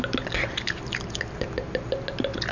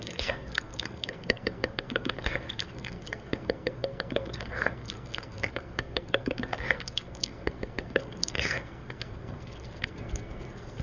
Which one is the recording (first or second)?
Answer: first